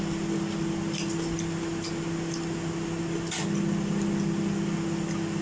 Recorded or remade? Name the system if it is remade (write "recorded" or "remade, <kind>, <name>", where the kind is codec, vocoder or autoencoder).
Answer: recorded